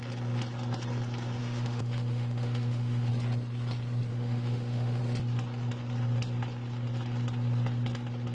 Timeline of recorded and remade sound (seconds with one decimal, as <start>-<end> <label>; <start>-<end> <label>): 0.0-1.4 recorded; 1.4-3.1 remade; 3.1-4.1 recorded; 4.1-5.0 remade; 5.0-8.3 recorded